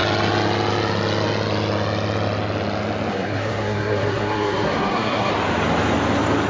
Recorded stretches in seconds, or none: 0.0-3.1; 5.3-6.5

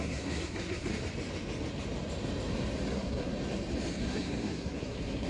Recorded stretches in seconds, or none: 0.9-2.9; 3.3-4.0